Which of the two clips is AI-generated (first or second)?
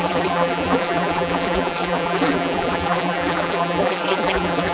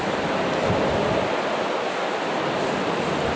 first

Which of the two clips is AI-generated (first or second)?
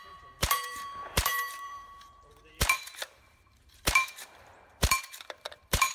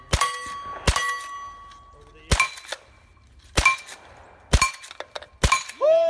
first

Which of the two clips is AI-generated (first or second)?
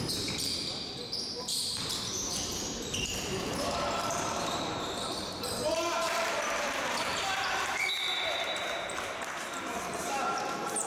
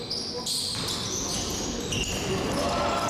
first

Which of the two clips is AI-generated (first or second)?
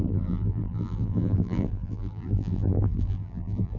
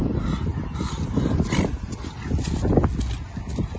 first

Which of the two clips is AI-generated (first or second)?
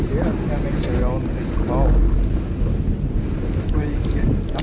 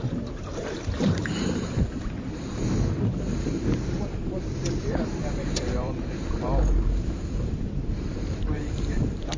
second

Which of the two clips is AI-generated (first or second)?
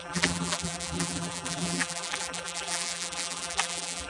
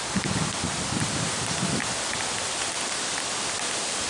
first